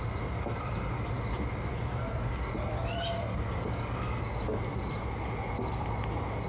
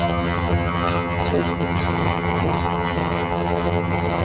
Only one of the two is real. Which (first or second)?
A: first